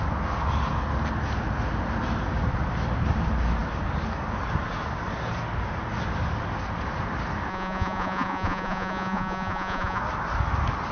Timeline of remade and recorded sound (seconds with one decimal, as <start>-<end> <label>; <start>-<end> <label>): 0.0-7.5 recorded; 7.5-10.0 remade; 10.0-10.9 recorded